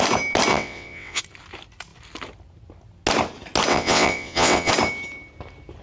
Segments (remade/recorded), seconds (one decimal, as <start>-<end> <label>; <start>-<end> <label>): 0.0-0.5 recorded; 0.5-1.2 remade; 1.2-3.7 recorded; 3.7-4.7 remade; 4.7-5.8 recorded